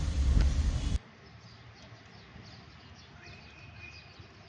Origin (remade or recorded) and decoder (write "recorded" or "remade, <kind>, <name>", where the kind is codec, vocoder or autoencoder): recorded